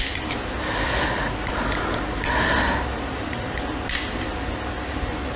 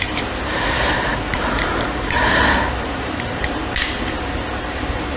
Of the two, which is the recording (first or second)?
first